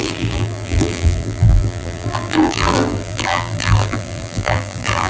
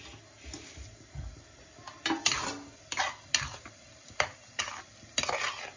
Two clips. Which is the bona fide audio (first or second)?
second